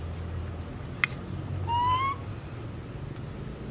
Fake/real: real